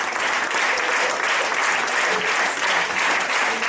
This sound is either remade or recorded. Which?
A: recorded